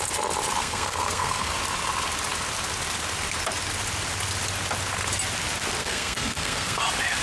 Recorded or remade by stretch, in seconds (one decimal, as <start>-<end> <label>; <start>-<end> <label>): 0.0-0.6 recorded; 0.6-1.5 remade; 1.5-5.8 recorded; 5.8-6.8 remade; 6.8-7.2 recorded